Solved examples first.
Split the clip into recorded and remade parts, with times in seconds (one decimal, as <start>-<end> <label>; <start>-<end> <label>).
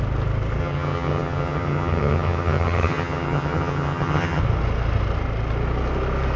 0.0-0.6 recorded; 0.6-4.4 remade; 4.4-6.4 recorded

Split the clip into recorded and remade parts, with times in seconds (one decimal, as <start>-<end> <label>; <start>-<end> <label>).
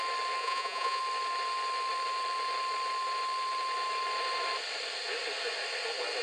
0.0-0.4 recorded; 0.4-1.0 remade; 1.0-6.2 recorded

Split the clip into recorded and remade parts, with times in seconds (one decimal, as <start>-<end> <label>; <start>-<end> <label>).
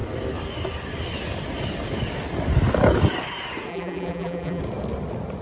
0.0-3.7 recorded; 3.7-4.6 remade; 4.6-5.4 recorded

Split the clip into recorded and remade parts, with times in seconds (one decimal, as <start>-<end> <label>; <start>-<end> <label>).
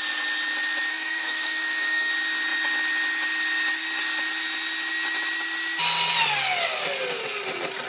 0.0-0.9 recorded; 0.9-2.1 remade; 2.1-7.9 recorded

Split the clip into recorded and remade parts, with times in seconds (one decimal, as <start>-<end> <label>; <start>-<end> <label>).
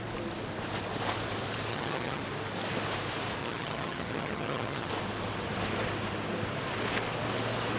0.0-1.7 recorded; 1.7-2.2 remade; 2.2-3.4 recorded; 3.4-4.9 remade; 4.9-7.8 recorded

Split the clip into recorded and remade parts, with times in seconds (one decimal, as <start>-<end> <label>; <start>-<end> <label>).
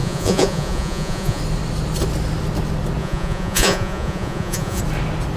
0.0-1.4 remade; 1.4-3.0 recorded; 3.0-4.8 remade; 4.8-5.4 recorded